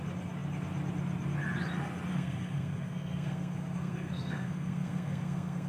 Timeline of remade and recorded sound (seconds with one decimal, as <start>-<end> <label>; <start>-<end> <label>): 0.0-2.1 recorded; 2.1-5.7 remade